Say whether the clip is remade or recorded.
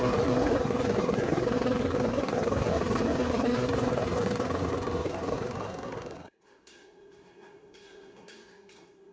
remade